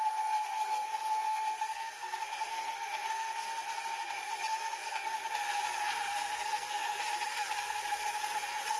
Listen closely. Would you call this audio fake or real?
fake